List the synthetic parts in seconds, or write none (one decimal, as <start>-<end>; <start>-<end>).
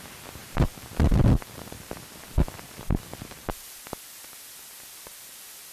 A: 0.4-3.8